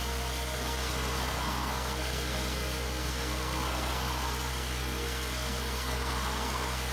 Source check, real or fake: fake